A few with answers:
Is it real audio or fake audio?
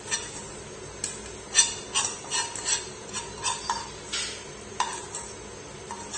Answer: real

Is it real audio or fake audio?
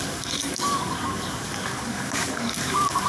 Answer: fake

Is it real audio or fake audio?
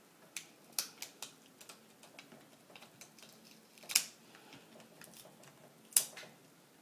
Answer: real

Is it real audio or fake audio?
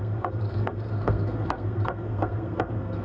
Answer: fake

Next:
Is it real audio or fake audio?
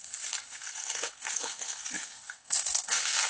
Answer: fake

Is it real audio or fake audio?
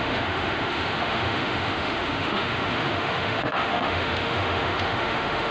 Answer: fake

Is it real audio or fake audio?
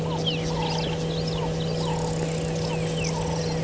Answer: real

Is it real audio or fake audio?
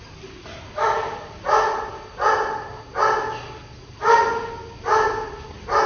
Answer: real